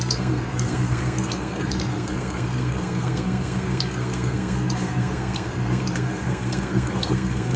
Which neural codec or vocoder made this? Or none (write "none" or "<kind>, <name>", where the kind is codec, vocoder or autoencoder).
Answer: codec, SNAC